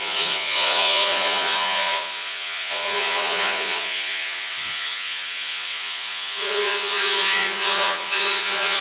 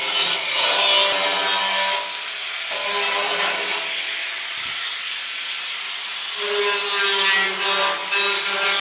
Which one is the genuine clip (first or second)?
second